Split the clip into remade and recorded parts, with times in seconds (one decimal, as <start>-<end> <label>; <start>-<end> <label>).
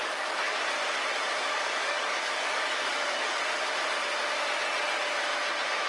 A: 0.0-0.6 remade; 0.6-1.5 recorded; 1.5-3.4 remade; 3.4-5.9 recorded